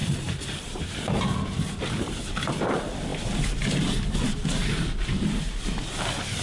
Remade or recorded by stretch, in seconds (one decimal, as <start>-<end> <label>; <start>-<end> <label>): 0.0-2.7 remade; 2.7-6.4 recorded

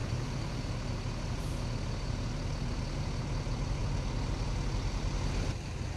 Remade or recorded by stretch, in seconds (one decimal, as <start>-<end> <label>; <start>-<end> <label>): 0.0-0.6 remade; 0.6-6.0 recorded

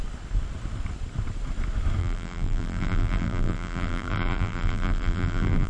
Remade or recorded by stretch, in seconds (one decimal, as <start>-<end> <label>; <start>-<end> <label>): 0.0-2.0 recorded; 2.0-5.7 remade

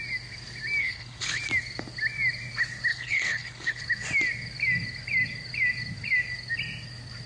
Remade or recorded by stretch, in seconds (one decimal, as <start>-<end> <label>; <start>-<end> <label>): 0.0-0.8 recorded; 0.8-1.4 remade; 1.4-2.9 recorded; 2.9-3.8 remade; 3.8-7.3 recorded